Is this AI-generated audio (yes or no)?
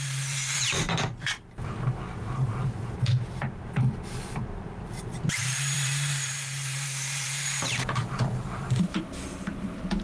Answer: yes